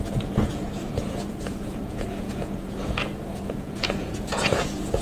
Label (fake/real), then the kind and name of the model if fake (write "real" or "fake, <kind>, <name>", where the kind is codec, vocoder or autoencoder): fake, vocoder, Vocos